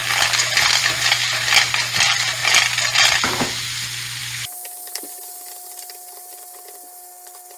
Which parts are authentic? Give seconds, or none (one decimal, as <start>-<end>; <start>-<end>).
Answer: 0.0-7.6